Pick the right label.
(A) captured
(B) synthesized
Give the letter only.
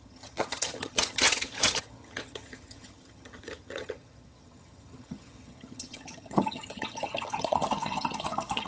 B